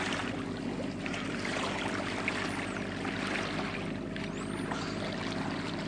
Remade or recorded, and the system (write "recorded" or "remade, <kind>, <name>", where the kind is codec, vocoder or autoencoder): recorded